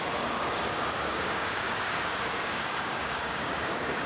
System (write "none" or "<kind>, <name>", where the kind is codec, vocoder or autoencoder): codec, DAC